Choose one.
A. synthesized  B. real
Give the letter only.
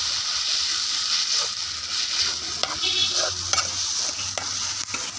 B